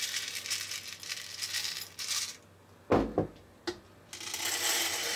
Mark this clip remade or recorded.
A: recorded